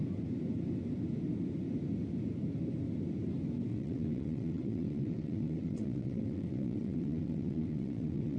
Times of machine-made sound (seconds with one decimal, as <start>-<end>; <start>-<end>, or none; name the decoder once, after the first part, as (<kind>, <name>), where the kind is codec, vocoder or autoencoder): 3.7-8.4 (vocoder, WaveNeXt)